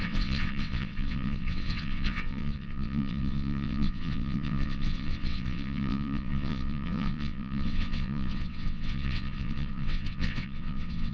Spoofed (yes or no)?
yes